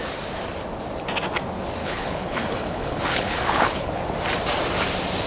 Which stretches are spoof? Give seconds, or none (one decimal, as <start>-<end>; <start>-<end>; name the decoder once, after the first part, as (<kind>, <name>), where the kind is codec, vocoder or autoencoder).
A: 1.8-4.0 (codec, HILCodec)